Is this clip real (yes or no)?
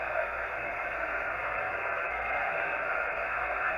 no